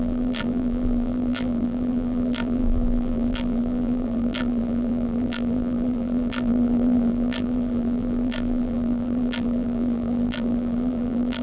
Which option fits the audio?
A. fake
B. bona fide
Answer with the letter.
A